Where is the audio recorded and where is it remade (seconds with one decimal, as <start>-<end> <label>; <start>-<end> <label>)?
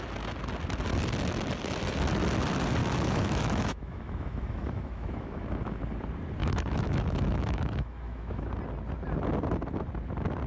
0.0-2.8 recorded; 2.8-5.8 remade; 5.8-6.4 recorded; 6.4-8.5 remade; 8.5-10.5 recorded